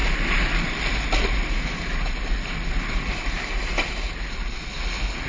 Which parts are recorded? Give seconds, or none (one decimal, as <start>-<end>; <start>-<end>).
0.0-5.3

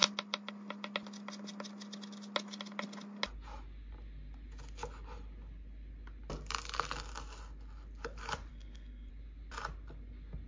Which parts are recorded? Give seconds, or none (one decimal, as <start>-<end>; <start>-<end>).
0.0-8.5; 9.1-10.5

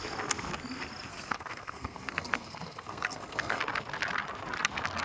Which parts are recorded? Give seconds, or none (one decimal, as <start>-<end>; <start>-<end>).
0.0-1.1; 3.6-5.0

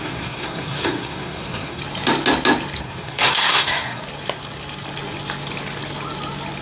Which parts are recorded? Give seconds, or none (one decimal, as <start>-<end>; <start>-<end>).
1.8-2.8; 4.0-6.6

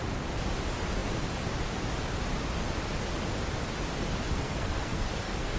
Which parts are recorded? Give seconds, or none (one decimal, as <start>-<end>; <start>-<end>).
0.0-4.3